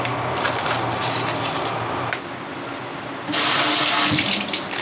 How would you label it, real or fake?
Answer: real